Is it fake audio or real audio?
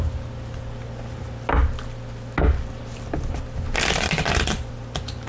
real